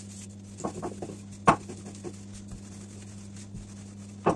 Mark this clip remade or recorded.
recorded